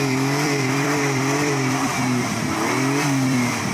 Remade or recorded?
remade